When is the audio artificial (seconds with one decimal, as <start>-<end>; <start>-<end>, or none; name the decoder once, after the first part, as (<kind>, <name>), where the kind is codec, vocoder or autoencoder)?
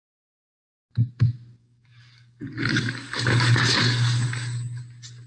1.6-4.8 (codec, DAC)